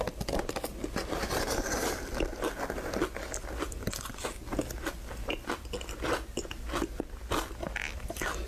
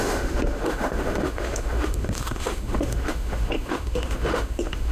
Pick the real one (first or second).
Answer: first